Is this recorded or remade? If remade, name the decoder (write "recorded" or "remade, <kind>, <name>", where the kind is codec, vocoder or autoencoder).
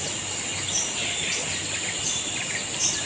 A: recorded